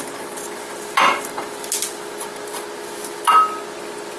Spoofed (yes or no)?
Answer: no